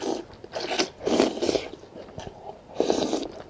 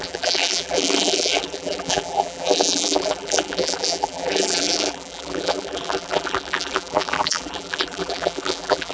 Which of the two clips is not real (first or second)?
second